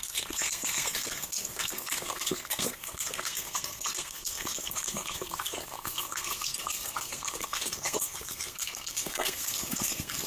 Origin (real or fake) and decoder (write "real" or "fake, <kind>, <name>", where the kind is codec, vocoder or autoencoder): fake, codec, SNAC